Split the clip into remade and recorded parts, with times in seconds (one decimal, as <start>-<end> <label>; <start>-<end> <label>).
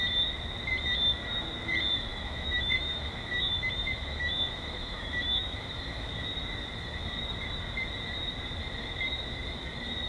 0.0-2.1 recorded; 2.1-6.1 remade; 6.1-10.1 recorded